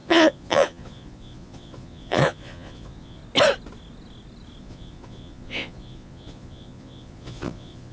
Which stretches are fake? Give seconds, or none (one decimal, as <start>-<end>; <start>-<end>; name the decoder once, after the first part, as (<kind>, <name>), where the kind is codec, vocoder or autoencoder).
0.0-3.2 (vocoder, Vocos); 4.6-7.9